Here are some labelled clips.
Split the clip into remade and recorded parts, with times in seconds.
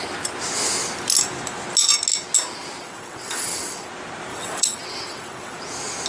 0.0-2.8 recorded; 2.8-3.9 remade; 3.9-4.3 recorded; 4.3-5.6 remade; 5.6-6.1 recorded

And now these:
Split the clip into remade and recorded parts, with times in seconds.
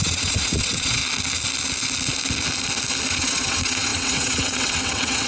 0.0-1.0 remade; 1.0-3.1 recorded; 3.1-5.3 remade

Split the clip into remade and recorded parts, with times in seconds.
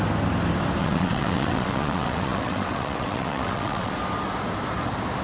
0.0-0.8 recorded; 0.8-3.9 remade; 3.9-5.2 recorded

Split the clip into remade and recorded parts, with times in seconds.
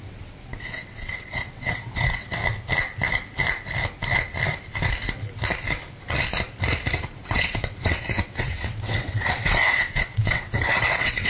0.0-2.4 remade; 2.4-7.2 recorded; 7.2-11.3 remade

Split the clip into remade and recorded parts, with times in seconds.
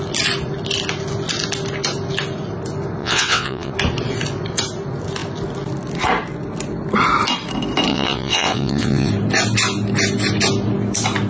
0.0-3.0 recorded; 3.0-3.7 remade; 3.7-7.9 recorded; 7.9-9.1 remade; 9.1-11.3 recorded